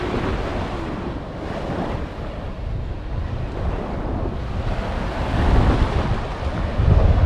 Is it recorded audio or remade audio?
recorded